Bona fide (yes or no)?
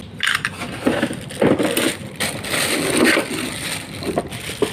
yes